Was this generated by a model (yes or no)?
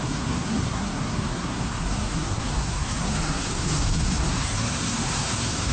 yes